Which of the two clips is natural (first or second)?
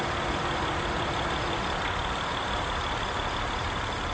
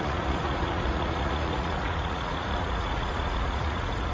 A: first